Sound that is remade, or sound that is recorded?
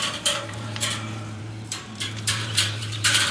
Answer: remade